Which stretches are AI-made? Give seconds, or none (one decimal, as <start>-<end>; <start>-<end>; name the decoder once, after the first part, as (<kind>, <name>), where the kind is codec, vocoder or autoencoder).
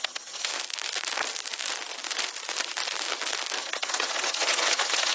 0.0-0.5 (vocoder, HiFi-GAN); 3.6-5.1